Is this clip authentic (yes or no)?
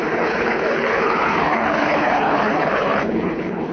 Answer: no